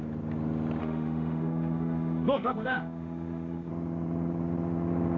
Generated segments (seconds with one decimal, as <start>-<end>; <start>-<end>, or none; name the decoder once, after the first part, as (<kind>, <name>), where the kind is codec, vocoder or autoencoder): 0.8-3.7 (autoencoder, DAC-VAE)